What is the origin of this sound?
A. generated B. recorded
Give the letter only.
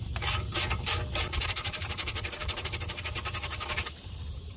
A